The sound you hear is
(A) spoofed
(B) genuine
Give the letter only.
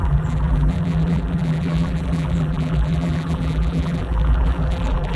A